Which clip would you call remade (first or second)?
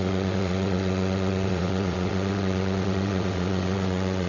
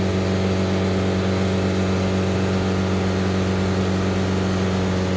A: first